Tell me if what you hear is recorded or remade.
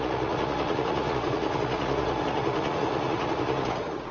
remade